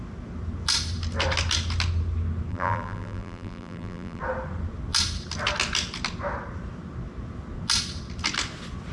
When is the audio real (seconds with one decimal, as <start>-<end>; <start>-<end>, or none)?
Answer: 0.0-2.5; 4.2-8.9